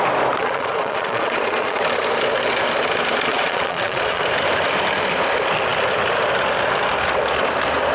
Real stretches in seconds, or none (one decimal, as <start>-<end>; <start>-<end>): 0.0-0.4; 1.8-3.3; 4.2-7.9